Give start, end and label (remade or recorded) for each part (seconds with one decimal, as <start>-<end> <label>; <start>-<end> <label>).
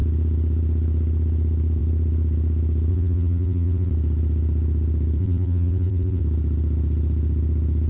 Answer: 0.0-2.9 recorded; 2.9-3.9 remade; 3.9-5.2 recorded; 5.2-6.2 remade; 6.2-7.9 recorded